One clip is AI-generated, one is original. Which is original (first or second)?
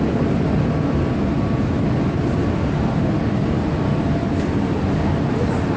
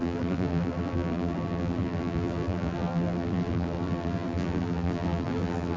first